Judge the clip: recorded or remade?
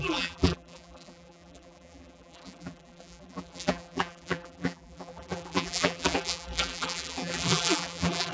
remade